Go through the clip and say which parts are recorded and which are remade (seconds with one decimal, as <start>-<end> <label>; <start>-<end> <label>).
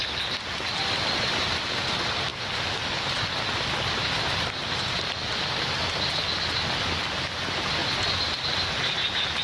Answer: 0.0-7.8 recorded; 7.8-8.4 remade; 8.4-9.4 recorded